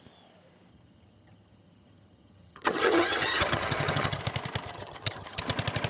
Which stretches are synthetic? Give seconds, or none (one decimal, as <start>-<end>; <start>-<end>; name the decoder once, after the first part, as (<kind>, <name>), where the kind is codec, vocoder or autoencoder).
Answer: 0.7-4.2 (vocoder, HiFi-GAN); 4.7-5.4